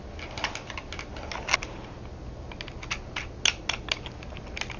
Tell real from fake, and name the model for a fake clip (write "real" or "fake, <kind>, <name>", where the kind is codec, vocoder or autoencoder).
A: real